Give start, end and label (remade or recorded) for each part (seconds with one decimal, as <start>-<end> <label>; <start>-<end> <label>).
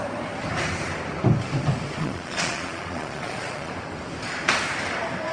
0.0-2.0 recorded; 2.0-3.7 remade; 3.7-5.3 recorded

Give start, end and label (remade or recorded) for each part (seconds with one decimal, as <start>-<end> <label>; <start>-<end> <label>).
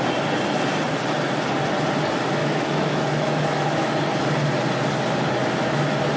0.0-2.4 recorded; 2.4-3.9 remade; 3.9-6.2 recorded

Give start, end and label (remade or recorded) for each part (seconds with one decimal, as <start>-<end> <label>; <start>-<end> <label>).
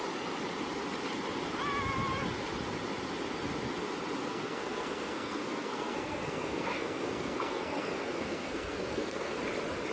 0.0-4.2 recorded; 4.2-9.4 remade; 9.4-9.9 recorded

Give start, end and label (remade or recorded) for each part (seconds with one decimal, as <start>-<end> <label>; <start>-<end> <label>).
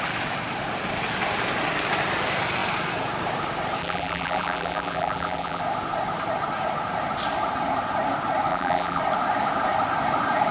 0.0-3.8 recorded; 3.8-5.6 remade; 5.6-8.5 recorded; 8.5-9.0 remade; 9.0-10.5 recorded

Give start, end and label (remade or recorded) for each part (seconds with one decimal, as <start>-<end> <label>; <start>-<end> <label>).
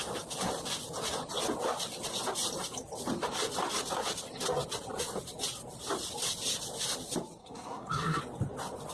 0.0-7.4 recorded; 7.4-8.2 remade; 8.2-8.9 recorded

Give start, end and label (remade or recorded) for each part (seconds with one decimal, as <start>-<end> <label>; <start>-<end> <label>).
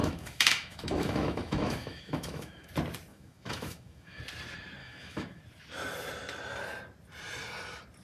0.0-2.7 remade; 2.7-3.1 recorded; 3.1-4.2 remade; 4.2-4.8 recorded; 4.8-5.4 remade; 5.4-8.0 recorded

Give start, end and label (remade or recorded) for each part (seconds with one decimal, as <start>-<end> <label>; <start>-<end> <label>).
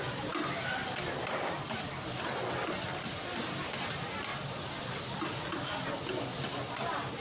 0.0-7.2 recorded